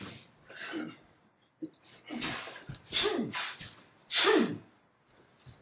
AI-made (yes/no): no